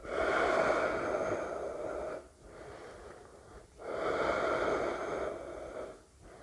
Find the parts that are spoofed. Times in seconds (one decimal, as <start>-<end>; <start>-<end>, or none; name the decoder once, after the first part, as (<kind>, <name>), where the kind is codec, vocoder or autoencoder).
none